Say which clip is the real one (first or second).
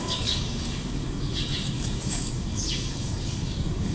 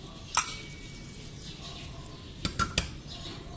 second